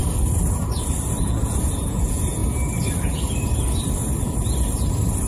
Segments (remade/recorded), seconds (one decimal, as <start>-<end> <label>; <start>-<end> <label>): 0.0-1.2 recorded; 1.2-2.4 remade; 2.4-5.3 recorded